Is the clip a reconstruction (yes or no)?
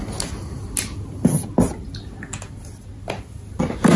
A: no